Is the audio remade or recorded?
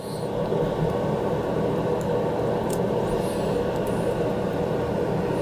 recorded